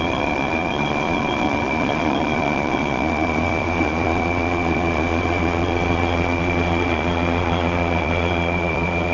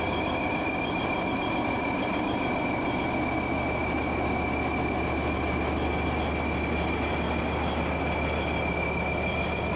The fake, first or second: first